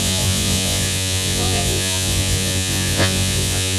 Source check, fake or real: fake